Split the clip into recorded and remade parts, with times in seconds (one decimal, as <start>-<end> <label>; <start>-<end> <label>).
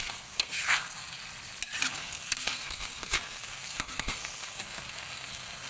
0.0-1.2 remade; 1.2-1.9 recorded; 1.9-5.7 remade